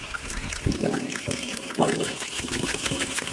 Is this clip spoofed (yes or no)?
yes